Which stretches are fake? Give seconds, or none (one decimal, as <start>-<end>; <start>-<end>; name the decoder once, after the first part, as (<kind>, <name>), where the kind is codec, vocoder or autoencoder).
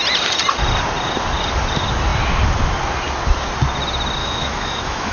4.2-5.1 (autoencoder, DAC-VAE)